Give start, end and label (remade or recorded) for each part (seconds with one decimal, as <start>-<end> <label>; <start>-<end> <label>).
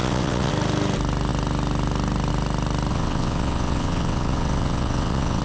0.0-0.5 remade; 0.5-2.9 recorded; 2.9-5.4 remade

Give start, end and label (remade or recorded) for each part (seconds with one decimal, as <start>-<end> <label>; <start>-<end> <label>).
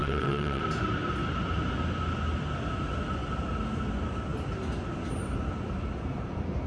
0.0-0.6 remade; 0.6-6.7 recorded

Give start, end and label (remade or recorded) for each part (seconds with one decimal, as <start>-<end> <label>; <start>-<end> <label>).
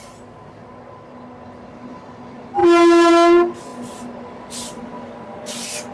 0.0-5.9 recorded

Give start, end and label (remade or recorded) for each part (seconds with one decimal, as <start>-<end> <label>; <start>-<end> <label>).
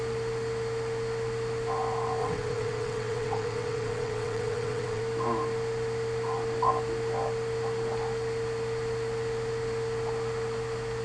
0.0-2.2 recorded; 2.2-5.0 remade; 5.0-11.0 recorded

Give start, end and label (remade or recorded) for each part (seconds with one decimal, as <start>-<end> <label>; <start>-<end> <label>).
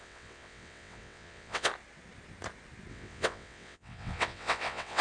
0.0-1.7 remade; 1.7-2.9 recorded; 2.9-5.0 remade